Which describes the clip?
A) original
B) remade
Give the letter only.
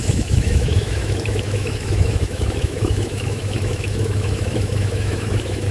B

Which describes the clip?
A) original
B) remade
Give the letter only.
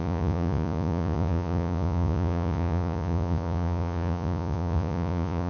B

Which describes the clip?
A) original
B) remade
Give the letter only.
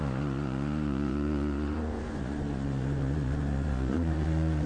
B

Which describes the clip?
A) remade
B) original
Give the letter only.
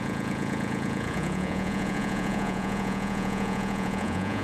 A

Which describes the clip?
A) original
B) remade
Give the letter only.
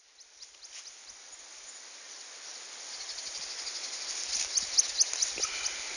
A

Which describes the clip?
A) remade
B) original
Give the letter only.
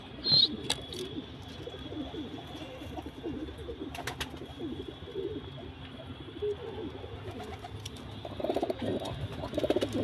B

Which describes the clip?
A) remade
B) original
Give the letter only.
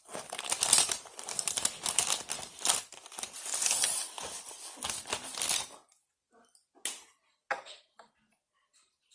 B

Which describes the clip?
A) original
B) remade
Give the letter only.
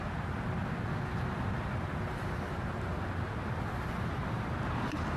A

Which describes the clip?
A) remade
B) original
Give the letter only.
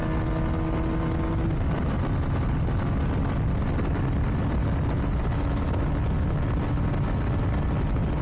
B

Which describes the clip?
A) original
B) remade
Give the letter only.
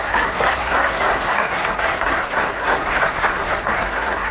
B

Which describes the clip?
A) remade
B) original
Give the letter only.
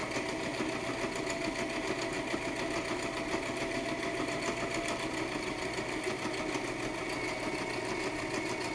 B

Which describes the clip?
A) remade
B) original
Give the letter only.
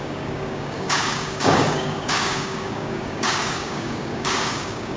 A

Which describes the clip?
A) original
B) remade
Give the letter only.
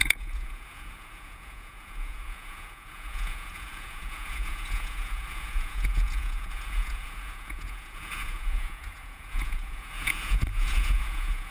B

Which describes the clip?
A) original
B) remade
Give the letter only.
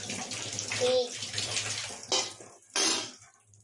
A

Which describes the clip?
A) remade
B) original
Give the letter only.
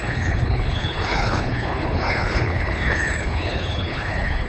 A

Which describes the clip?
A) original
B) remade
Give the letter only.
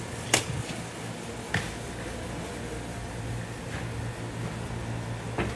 A